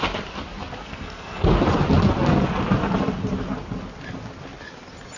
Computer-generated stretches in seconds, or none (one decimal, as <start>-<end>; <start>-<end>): 0.8-1.4